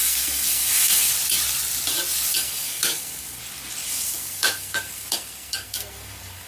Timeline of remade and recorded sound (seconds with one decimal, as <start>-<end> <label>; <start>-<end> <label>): 0.0-1.1 remade; 1.1-2.3 recorded; 2.3-3.4 remade; 3.4-3.8 recorded; 3.8-6.5 remade